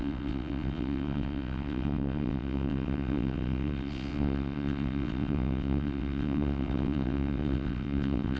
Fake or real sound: fake